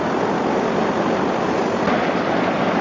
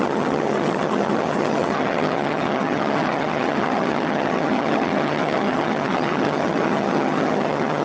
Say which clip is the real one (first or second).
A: first